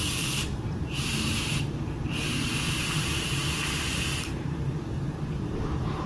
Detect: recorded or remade remade